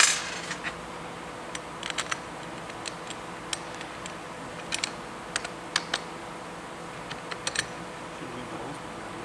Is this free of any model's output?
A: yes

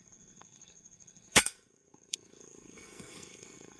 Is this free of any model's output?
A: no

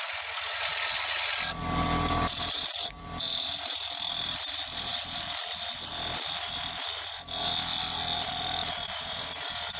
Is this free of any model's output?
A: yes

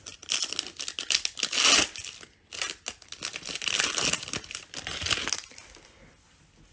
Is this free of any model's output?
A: yes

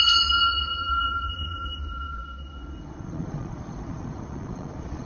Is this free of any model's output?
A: no